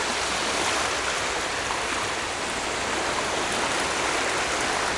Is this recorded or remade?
recorded